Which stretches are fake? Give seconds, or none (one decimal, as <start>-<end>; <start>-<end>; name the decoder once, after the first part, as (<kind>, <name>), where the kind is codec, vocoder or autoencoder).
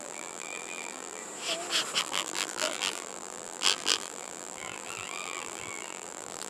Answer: 0.0-1.2 (vocoder, BigVGAN v2); 2.0-6.5